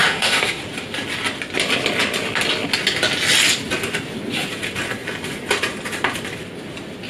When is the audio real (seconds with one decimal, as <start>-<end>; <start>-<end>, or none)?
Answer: 0.6-7.1